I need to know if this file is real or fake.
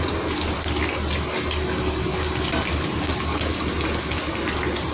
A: real